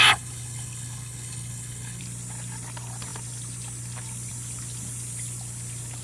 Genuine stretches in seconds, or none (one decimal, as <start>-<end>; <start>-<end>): 2.0-6.0